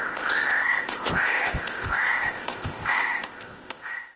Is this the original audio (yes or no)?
no